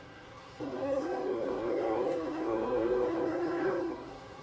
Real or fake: fake